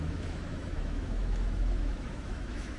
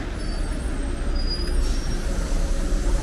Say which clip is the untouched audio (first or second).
second